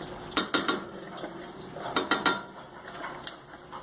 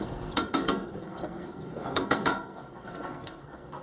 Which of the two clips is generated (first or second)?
second